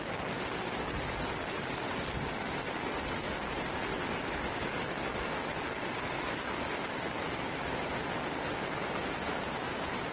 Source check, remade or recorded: recorded